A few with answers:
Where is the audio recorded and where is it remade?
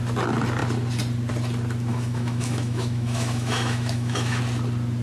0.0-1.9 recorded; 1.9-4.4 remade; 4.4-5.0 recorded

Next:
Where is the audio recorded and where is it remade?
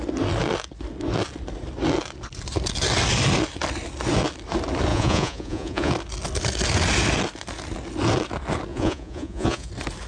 0.0-4.9 recorded; 4.9-5.9 remade; 5.9-8.7 recorded; 8.7-9.7 remade; 9.7-10.1 recorded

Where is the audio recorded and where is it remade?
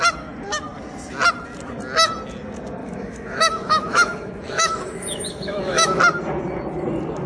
0.0-2.8 recorded; 2.8-6.0 remade; 6.0-7.3 recorded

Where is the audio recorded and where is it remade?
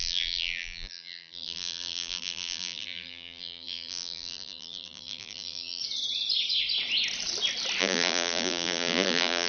0.0-5.8 remade; 5.8-7.8 recorded; 7.8-9.5 remade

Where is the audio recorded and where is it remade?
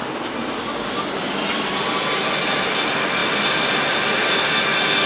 0.0-5.1 recorded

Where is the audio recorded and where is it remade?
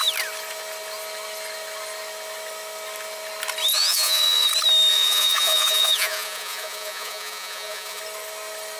0.0-3.7 recorded; 3.7-4.5 remade; 4.5-4.9 recorded; 4.9-8.0 remade; 8.0-8.8 recorded